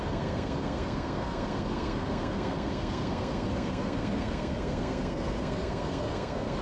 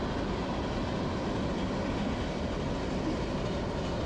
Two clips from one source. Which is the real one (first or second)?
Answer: second